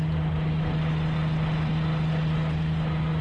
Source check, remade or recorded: recorded